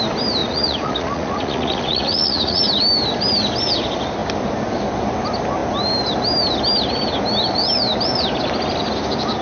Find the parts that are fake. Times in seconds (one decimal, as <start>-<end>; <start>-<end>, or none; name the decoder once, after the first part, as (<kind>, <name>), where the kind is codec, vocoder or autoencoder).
0.4-2.6 (vocoder, Vocos)